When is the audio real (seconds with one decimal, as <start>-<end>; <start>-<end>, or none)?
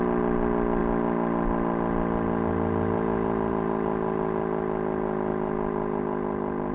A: 0.0-6.7